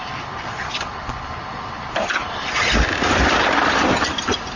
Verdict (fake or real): fake